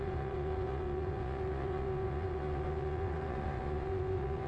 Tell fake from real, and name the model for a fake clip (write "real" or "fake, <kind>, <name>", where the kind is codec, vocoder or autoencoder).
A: fake, vocoder, Vocos